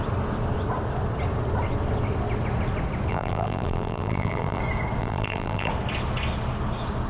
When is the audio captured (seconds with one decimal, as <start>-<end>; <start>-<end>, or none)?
0.0-3.1; 4.6-5.0; 5.7-7.1